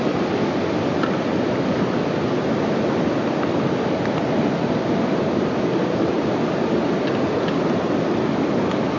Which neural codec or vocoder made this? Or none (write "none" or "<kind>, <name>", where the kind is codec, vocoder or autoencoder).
none